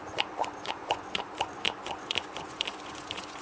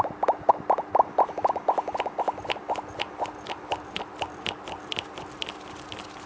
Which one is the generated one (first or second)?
first